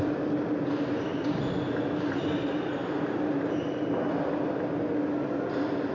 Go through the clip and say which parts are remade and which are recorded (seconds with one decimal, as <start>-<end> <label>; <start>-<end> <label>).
0.0-5.9 recorded